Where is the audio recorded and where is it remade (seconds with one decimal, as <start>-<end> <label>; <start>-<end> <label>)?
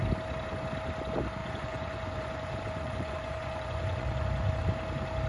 0.0-1.4 recorded; 1.4-4.6 remade; 4.6-5.3 recorded